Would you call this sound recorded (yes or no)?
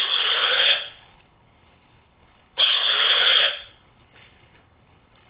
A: no